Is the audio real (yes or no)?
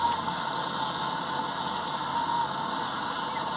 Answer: yes